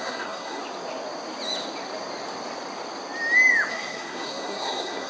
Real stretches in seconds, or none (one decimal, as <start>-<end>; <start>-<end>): 0.6-3.7